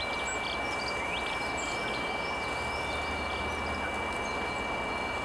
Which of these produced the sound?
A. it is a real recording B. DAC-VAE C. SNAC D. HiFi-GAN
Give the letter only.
A